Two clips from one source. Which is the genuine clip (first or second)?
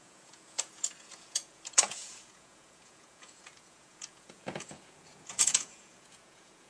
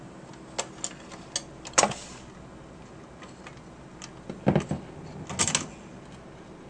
second